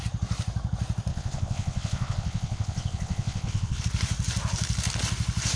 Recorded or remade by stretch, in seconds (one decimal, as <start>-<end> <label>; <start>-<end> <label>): 0.0-1.1 recorded; 1.1-3.8 remade; 3.8-5.6 recorded